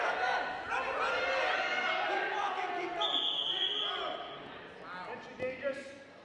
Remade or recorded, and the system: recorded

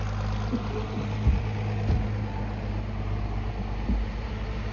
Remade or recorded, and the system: recorded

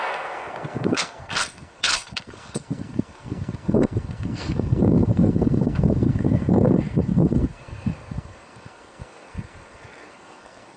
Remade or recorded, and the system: remade, codec, SNAC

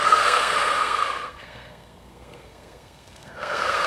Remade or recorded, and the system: remade, codec, SNAC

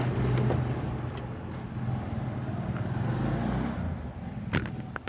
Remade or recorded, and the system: recorded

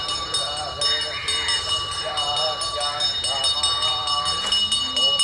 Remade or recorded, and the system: recorded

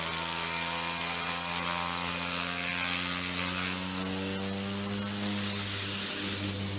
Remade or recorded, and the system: recorded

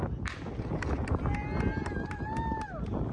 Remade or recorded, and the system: recorded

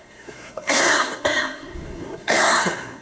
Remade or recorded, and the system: remade, codec, SNAC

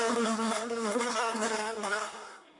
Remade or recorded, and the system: remade, codec, SNAC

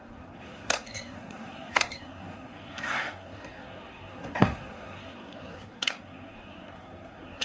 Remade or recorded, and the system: remade, codec, SNAC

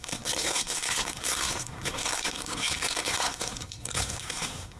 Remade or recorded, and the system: remade, codec, SNAC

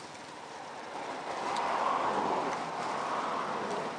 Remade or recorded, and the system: recorded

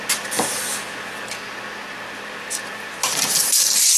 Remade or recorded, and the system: recorded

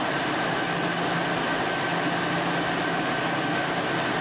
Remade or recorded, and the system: recorded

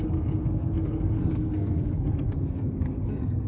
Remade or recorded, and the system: remade, codec, SNAC